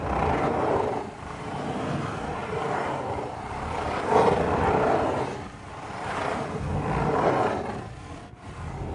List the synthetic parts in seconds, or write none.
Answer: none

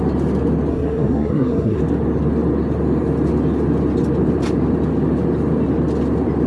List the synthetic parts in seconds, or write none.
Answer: 0.7-1.8 (codec, SNAC)